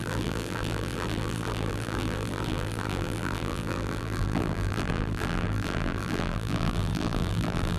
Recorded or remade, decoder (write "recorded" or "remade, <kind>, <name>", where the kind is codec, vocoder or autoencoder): remade, vocoder, BigVGAN v2